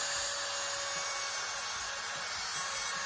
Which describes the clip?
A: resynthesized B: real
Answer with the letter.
B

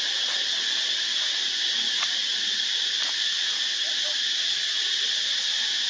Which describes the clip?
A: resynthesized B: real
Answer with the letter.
B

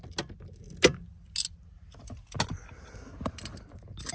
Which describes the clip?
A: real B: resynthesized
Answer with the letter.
A